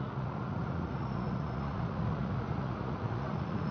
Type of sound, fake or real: fake